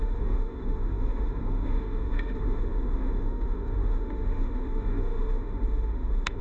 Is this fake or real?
fake